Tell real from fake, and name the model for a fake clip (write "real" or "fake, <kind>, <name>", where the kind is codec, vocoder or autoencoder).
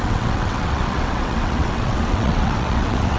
fake, vocoder, WaveNeXt